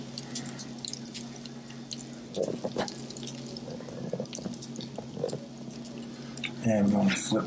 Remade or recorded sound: recorded